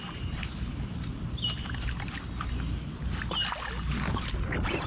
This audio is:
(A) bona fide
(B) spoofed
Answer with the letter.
A